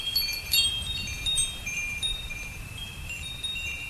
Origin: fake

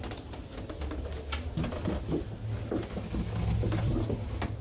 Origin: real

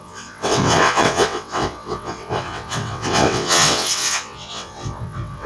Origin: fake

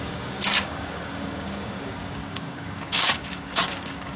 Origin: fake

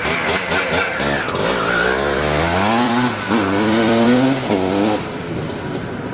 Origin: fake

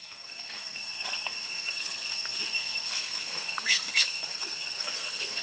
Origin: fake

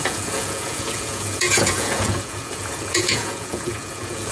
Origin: fake